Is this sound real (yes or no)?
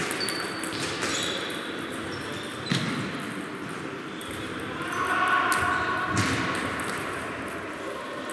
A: no